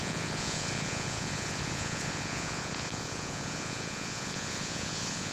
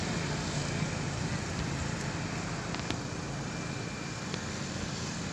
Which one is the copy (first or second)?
first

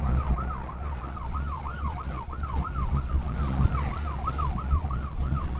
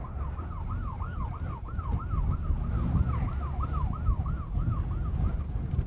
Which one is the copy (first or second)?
first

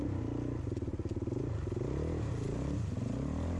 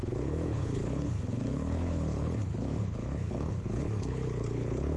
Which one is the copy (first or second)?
second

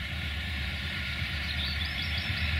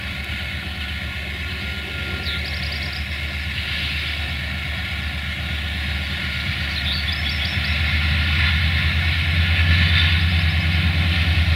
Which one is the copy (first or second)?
first